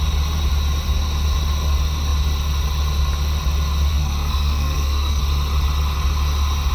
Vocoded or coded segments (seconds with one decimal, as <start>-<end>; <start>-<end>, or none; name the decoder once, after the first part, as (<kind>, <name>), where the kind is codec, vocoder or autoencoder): 3.9-5.2 (codec, SNAC)

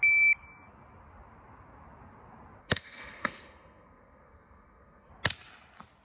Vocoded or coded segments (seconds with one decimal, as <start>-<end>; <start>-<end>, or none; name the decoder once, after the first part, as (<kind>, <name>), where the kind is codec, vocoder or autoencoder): 2.6-5.1 (codec, SNAC)

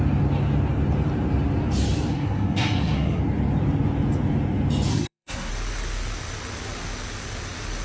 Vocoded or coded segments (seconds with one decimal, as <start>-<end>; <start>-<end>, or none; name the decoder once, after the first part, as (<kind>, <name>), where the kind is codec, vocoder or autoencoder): 2.1-3.2 (codec, SNAC); 4.9-5.5

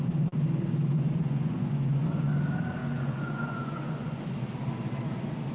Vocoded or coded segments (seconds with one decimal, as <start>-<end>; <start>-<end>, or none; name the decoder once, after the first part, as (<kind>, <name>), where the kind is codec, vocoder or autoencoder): 0.9-2.3 (vocoder, Vocos); 2.8-4.2

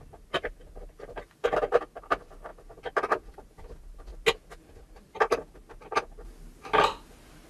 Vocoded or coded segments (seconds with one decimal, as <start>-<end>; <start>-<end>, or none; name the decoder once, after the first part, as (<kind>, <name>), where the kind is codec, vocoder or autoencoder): none

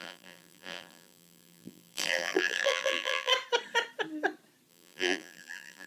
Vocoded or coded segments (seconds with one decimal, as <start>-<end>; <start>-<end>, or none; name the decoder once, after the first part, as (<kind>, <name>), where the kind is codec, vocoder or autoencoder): 0.0-3.3 (vocoder, BigVGAN v2); 4.7-5.9

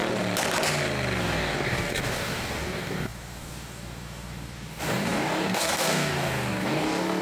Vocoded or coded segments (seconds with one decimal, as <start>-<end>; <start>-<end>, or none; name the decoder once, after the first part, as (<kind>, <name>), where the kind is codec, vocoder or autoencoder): 1.2-7.2 (codec, DAC)